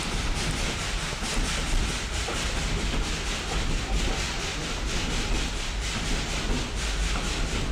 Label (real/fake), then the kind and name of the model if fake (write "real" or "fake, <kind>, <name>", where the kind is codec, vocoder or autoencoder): real